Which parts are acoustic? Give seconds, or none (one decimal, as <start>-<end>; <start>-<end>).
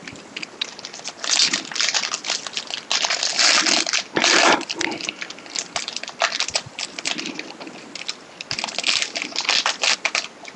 0.0-10.6